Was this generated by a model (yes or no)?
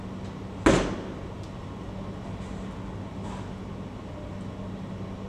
no